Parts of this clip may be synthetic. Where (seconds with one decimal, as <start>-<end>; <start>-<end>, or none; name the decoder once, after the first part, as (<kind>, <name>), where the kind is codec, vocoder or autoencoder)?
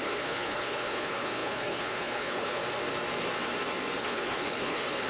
0.0-2.6 (codec, HILCodec); 4.0-5.1